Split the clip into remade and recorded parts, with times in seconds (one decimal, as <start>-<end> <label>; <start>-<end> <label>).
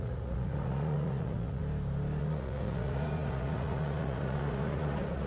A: 0.0-1.6 remade; 1.6-2.2 recorded; 2.2-5.3 remade